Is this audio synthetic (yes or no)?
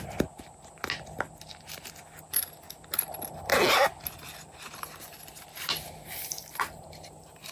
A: no